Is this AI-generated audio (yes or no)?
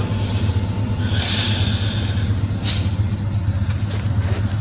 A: no